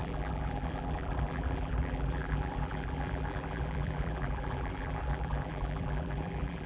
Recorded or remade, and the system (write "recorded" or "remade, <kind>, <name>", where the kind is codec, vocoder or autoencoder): remade, vocoder, BigVGAN v2